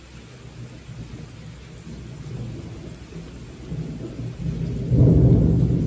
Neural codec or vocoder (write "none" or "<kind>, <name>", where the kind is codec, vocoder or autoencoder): none